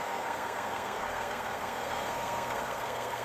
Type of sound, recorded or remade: remade